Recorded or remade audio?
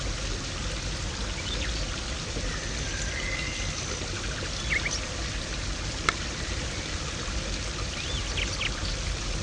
recorded